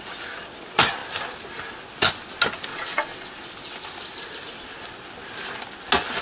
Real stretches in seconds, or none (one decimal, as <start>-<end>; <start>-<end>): 0.0-2.7; 3.3-6.2